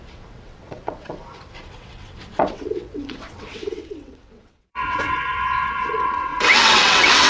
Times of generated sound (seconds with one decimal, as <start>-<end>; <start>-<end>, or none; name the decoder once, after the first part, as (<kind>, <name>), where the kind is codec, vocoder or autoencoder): 0.0-7.3 (vocoder, WaveNeXt)